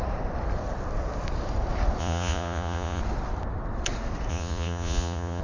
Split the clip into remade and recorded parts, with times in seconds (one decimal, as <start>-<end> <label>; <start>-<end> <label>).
0.0-2.0 recorded; 2.0-3.0 remade; 3.0-4.3 recorded; 4.3-5.4 remade